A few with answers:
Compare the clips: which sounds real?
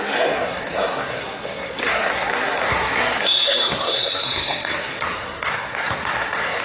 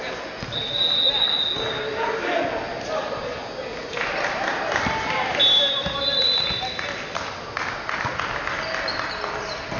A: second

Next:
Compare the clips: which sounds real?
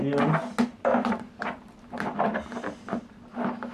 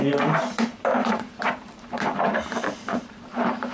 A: first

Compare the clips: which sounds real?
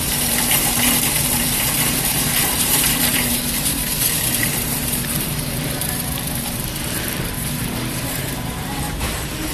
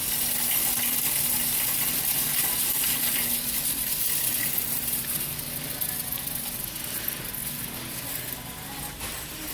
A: second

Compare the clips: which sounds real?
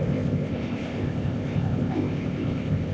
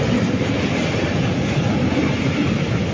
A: second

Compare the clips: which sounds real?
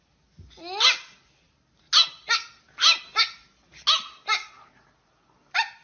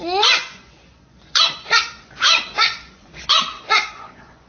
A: first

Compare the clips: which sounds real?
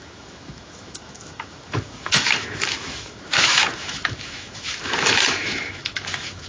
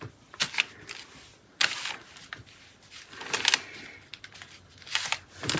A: second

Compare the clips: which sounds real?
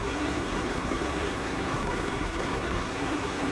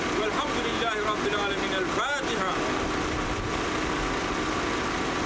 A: second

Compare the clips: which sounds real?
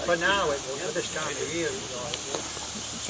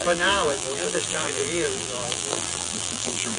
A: first